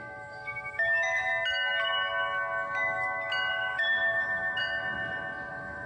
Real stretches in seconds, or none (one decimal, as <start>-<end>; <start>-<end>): 1.3-3.5; 4.6-5.5